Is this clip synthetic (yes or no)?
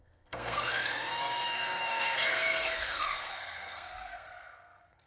yes